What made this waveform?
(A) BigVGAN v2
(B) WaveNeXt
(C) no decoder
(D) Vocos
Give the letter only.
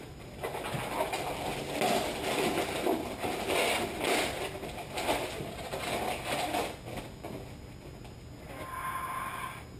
C